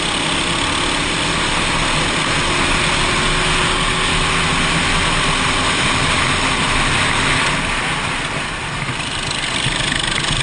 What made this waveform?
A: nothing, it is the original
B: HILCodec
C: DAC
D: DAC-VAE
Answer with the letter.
A